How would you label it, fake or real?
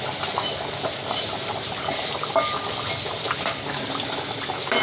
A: real